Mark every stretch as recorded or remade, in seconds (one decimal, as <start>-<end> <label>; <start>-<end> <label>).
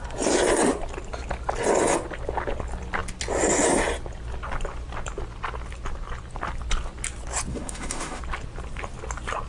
0.0-7.5 recorded; 7.5-8.2 remade; 8.2-9.5 recorded